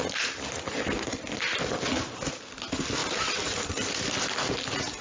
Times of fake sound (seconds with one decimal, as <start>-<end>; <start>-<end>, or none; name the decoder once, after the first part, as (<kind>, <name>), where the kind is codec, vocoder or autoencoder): 3.0-4.5 (vocoder, BigVGAN v2)